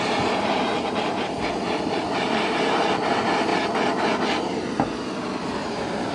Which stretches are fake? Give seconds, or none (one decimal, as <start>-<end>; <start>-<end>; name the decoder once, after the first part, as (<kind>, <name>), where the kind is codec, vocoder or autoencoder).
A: 0.0-3.5 (vocoder, BigVGAN v2); 5.5-6.1

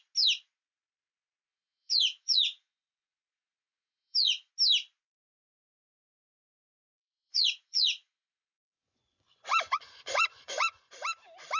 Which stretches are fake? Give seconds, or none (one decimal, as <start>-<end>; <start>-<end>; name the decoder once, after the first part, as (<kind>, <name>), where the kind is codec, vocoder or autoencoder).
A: 1.5-4.5 (vocoder, Vocos); 5.8-10.9

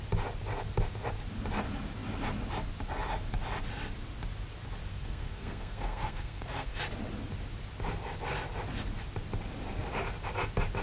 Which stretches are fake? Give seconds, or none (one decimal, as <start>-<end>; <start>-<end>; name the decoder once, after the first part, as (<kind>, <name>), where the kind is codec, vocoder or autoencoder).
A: 4.9-6.8 (codec, SNAC)

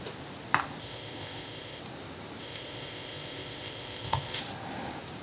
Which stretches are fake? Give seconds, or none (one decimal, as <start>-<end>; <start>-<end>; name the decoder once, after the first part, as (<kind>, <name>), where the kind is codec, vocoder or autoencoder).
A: 0.8-1.8 (codec, ZipCodec); 2.4-4.4

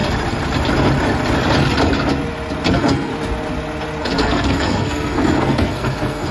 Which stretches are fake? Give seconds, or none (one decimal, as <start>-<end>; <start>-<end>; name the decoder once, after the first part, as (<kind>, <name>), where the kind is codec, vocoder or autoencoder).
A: 2.7-3.1 (codec, SNAC); 4.0-6.3

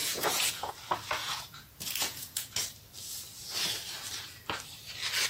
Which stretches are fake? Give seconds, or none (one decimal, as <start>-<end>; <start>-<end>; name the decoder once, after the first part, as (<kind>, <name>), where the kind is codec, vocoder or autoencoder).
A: 0.0-0.7 (vocoder, Vocos); 1.2-2.5

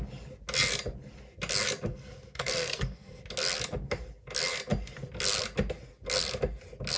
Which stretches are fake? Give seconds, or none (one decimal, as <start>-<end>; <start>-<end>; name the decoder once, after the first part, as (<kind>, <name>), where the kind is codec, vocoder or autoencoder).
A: 1.9-3.2 (codec, SNAC)